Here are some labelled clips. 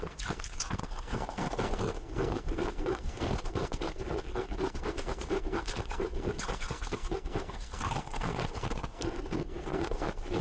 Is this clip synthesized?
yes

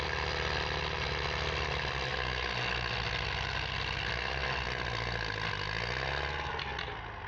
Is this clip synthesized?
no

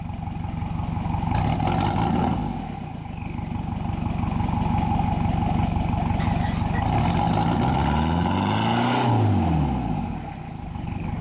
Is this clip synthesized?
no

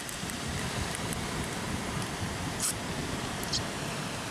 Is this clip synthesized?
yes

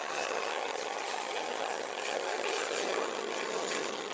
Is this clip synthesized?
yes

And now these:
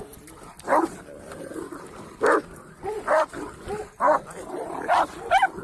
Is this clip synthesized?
yes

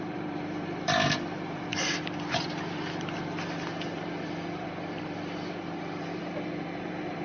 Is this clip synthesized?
yes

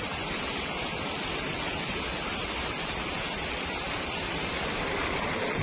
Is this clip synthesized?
no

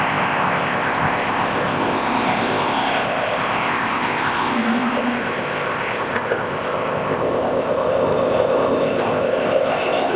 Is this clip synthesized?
yes